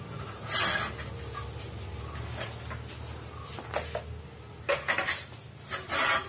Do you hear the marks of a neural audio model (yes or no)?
no